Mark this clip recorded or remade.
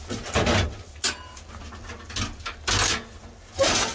recorded